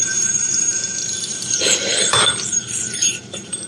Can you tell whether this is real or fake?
fake